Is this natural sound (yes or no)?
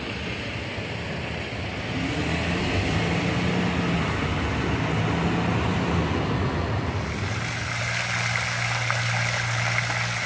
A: yes